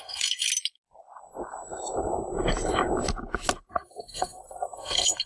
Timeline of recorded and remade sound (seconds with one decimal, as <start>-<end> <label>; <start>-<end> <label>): 0.0-0.5 remade; 0.5-3.7 recorded; 3.7-5.3 remade